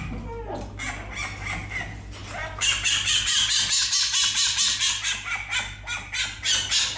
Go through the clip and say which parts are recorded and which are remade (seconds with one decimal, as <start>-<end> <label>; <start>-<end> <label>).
0.0-7.0 recorded